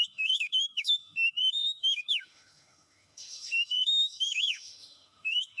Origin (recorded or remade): remade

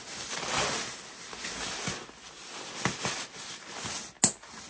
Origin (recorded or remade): recorded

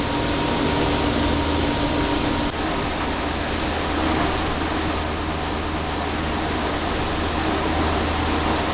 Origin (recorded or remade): recorded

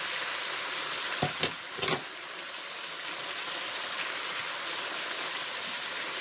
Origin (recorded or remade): recorded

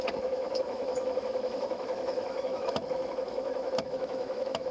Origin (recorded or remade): remade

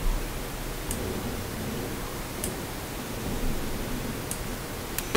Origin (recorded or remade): recorded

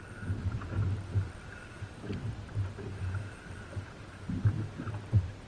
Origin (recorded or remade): recorded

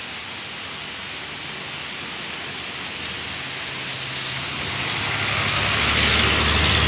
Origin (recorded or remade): recorded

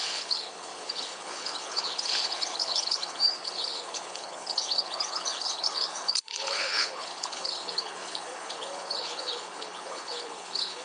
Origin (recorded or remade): remade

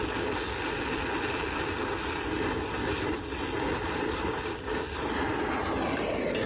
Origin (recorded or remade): recorded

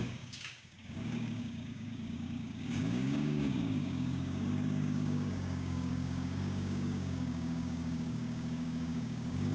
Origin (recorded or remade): remade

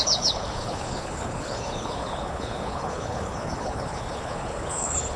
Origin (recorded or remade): remade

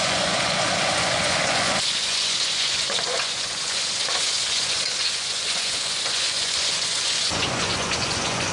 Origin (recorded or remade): remade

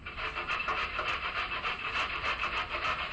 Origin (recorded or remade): remade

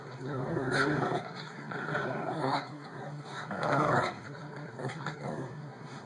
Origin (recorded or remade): remade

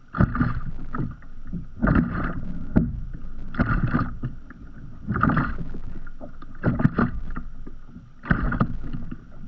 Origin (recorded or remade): recorded